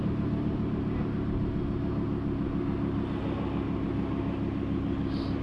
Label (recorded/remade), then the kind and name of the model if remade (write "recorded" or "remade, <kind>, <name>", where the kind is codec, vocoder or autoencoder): recorded